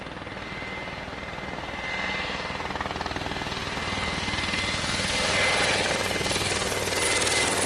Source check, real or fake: real